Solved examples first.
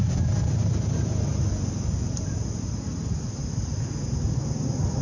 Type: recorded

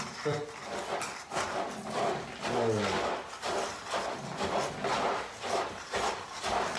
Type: recorded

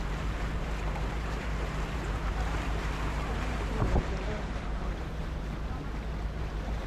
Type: remade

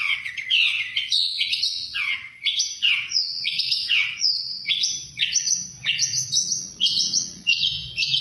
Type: remade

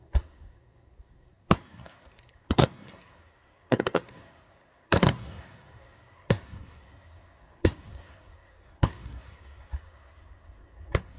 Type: remade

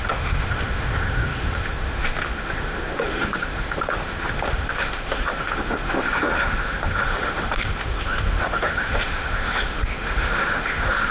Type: remade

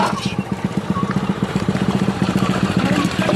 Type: remade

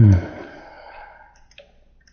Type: recorded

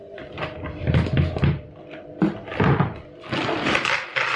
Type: recorded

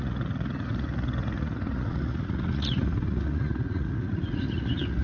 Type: remade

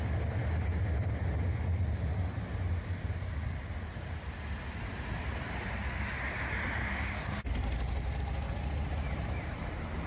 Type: recorded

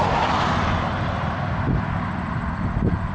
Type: recorded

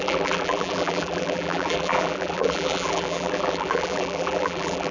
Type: remade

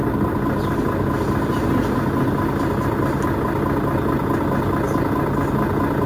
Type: recorded